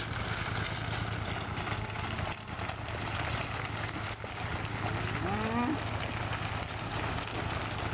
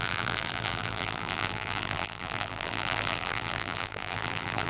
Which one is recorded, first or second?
first